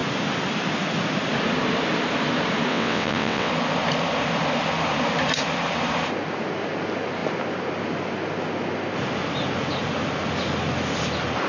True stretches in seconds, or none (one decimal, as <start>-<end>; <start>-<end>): 0.0-2.7; 3.5-11.5